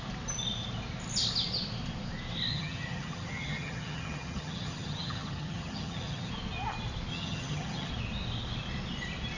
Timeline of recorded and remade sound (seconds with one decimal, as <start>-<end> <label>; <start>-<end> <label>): 0.0-2.5 recorded; 2.5-6.3 remade; 6.3-7.1 recorded; 7.1-7.9 remade; 7.9-9.4 recorded